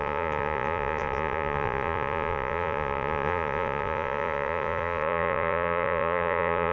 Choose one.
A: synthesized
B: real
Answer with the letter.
A